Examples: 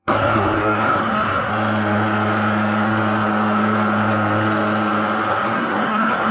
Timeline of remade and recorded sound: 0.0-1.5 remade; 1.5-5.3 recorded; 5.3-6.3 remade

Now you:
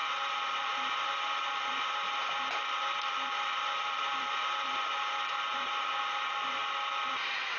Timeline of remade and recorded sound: 0.0-6.6 remade; 6.6-7.1 recorded; 7.1-7.6 remade

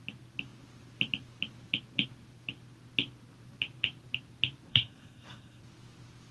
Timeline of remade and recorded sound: 0.0-4.7 recorded; 4.7-5.6 remade; 5.6-6.3 recorded

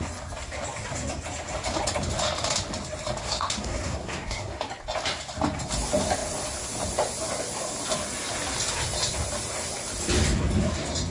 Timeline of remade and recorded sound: 0.0-3.2 recorded; 3.2-4.6 remade; 4.6-11.1 recorded

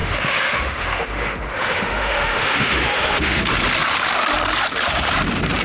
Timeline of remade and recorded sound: 0.0-3.4 remade; 3.4-5.6 recorded

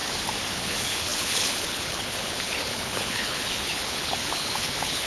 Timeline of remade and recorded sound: 0.0-0.5 recorded; 0.5-5.1 remade

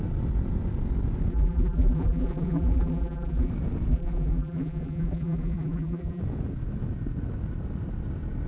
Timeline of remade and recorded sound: 0.0-1.3 recorded; 1.3-3.5 remade; 3.5-3.9 recorded; 3.9-6.2 remade; 6.2-8.5 recorded